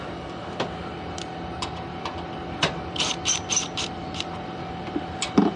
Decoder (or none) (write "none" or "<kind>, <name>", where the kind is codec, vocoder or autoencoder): none